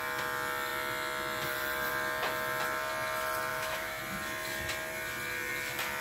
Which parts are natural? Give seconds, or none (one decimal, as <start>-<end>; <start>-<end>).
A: 0.0-3.5; 4.0-6.0

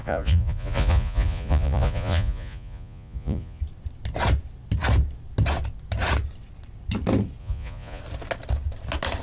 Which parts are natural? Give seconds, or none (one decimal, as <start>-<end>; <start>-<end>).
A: 3.6-7.4; 8.0-9.2

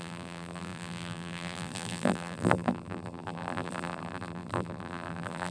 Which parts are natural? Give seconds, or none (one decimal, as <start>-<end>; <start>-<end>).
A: none

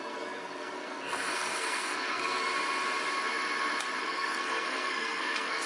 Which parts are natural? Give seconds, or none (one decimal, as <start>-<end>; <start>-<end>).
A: 2.5-4.0

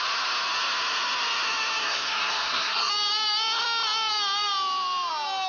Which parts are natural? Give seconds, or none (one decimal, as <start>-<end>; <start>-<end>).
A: 0.0-1.8; 2.9-5.5